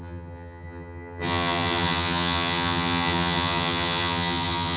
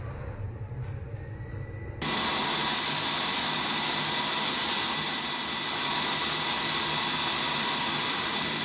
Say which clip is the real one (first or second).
second